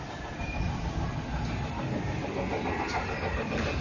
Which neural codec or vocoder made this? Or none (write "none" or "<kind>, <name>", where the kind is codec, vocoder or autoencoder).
none